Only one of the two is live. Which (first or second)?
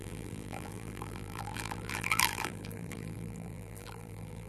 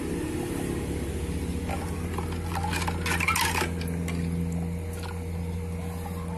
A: second